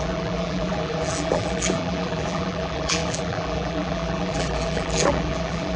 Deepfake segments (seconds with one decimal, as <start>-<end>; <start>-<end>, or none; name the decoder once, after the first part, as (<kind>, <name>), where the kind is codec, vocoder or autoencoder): 0.0-5.8 (vocoder, BigVGAN v2)